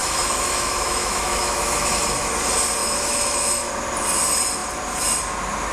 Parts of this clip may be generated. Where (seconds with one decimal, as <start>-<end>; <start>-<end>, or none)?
0.0-2.3; 2.8-3.7